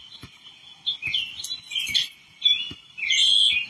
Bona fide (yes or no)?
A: yes